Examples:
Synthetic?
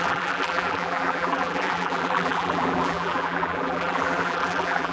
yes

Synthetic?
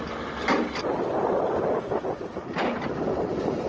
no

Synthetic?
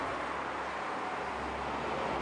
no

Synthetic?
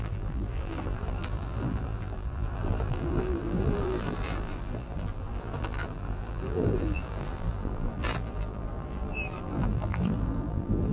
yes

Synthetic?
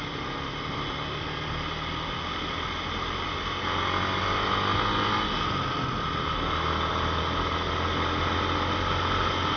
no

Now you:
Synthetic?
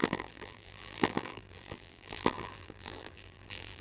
yes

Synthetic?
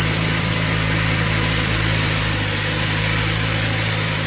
yes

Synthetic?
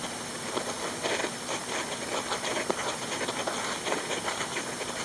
no